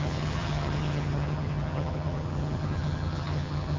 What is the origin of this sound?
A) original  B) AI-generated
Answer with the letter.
B